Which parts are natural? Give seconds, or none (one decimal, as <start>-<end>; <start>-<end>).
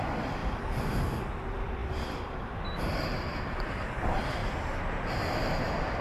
0.4-1.3; 4.4-6.0